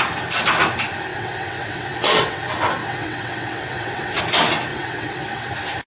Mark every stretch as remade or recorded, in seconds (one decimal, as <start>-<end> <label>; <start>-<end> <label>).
0.0-1.1 recorded; 1.1-2.4 remade; 2.4-2.8 recorded; 2.8-4.2 remade; 4.2-4.7 recorded; 4.7-5.5 remade; 5.5-5.9 recorded

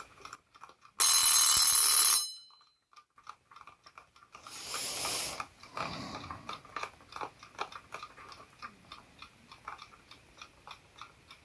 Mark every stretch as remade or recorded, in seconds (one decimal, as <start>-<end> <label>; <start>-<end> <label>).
0.0-11.4 recorded

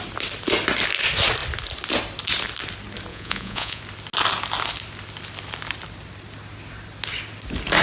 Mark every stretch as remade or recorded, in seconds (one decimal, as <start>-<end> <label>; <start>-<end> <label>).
0.0-3.1 recorded; 3.1-3.8 remade; 3.8-7.8 recorded